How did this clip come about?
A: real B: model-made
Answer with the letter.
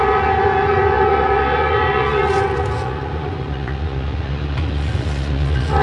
B